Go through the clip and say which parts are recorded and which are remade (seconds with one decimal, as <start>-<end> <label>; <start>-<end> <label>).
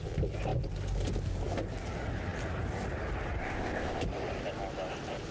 0.0-3.4 recorded; 3.4-4.0 remade; 4.0-5.3 recorded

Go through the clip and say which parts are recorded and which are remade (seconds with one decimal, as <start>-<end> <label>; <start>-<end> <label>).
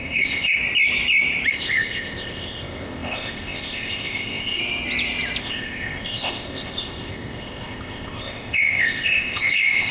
0.0-0.6 remade; 0.6-1.5 recorded; 1.5-4.6 remade; 4.6-5.4 recorded; 5.4-9.9 remade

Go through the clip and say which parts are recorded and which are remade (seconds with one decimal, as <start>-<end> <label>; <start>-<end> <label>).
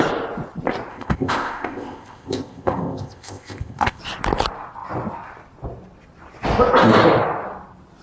0.0-0.9 recorded; 0.9-4.0 remade; 4.0-8.0 recorded